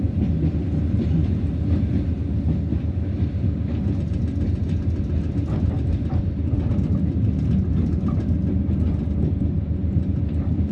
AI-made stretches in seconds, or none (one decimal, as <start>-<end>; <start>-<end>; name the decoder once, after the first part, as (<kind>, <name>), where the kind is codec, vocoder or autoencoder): none